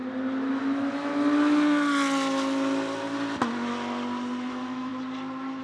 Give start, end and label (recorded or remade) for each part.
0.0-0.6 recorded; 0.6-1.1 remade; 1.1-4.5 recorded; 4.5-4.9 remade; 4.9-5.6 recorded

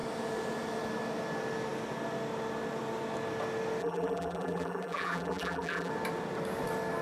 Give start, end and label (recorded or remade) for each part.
0.0-3.8 recorded; 3.8-5.9 remade; 5.9-7.0 recorded